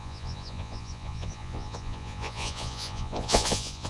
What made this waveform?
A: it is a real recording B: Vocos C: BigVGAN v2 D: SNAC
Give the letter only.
B